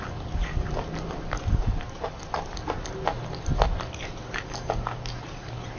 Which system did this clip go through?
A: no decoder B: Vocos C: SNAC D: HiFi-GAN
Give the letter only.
A